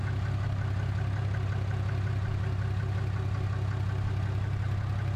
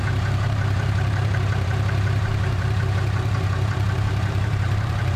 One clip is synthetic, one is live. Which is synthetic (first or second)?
second